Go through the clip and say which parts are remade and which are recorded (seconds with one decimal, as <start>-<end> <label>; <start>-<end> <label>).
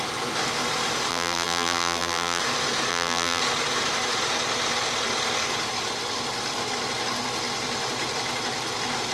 0.0-1.1 recorded; 1.1-2.4 remade; 2.4-2.9 recorded; 2.9-3.4 remade; 3.4-9.1 recorded